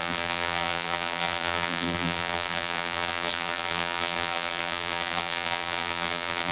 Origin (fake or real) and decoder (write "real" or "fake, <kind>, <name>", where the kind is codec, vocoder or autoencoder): fake, vocoder, BigVGAN v2